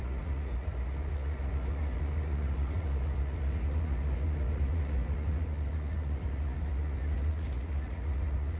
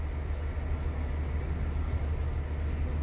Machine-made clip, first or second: first